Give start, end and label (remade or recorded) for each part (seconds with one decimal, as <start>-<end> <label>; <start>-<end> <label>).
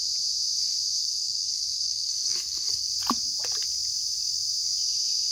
0.0-1.0 recorded; 1.0-2.9 remade; 2.9-5.3 recorded